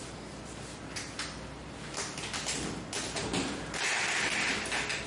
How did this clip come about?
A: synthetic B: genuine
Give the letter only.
B